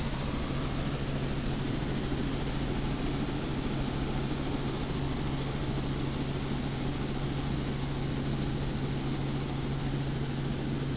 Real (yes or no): yes